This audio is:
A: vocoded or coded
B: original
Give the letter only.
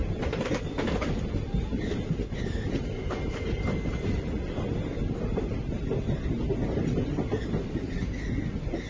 B